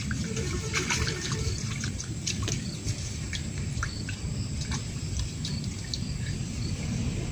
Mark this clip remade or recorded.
remade